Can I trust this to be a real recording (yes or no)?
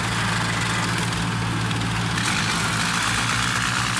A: yes